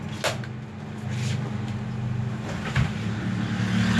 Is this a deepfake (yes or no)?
no